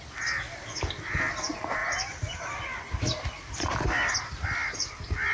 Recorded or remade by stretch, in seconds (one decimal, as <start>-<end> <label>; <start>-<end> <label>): 0.0-1.8 recorded; 1.8-4.2 remade; 4.2-5.3 recorded